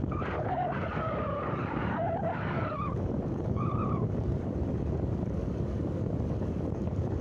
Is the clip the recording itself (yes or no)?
no